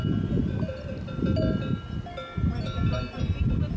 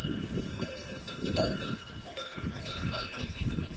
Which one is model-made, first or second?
second